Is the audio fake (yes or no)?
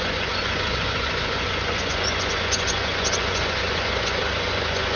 yes